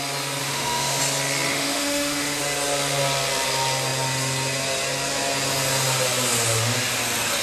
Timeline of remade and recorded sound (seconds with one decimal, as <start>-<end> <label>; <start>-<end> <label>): 0.0-0.4 recorded; 0.4-1.0 remade; 1.0-1.5 recorded; 1.5-2.4 remade; 2.4-7.4 recorded